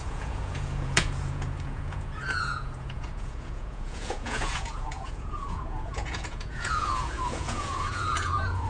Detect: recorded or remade remade